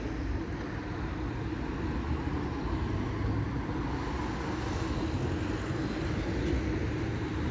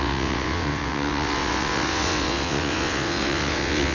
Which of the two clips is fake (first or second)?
second